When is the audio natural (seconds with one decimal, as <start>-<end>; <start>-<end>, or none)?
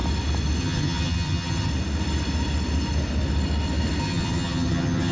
0.0-0.6; 1.7-4.0